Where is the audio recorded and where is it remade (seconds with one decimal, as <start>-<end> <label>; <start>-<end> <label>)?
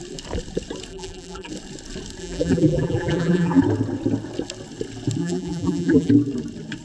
0.0-0.9 recorded; 0.9-1.5 remade; 1.5-2.2 recorded; 2.2-3.6 remade; 3.6-5.2 recorded; 5.2-6.1 remade; 6.1-6.8 recorded